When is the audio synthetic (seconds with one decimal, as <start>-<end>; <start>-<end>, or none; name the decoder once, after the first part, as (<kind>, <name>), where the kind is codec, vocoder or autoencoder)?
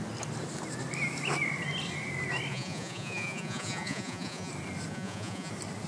2.5-4.5 (vocoder, Vocos); 4.9-5.5